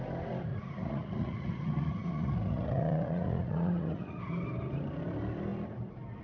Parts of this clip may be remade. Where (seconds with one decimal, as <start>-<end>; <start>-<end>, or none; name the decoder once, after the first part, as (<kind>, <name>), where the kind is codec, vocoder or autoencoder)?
0.5-4.2 (vocoder, Vocos)